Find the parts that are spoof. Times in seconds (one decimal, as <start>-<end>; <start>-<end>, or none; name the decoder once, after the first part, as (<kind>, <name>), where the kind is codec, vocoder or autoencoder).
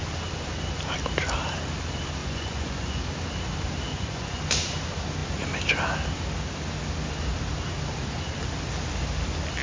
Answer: 2.2-3.0 (vocoder, Vocos); 3.9-4.4